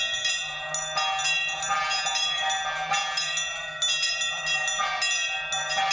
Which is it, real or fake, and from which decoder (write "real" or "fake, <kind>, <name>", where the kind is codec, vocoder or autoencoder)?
real